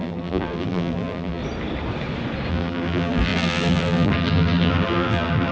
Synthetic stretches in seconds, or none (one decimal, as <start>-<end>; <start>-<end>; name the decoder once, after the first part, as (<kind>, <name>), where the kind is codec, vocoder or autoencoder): 0.0-1.4 (vocoder, BigVGAN v2); 2.5-5.5